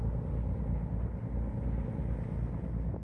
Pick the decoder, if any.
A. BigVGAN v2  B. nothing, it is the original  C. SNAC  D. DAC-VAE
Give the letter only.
B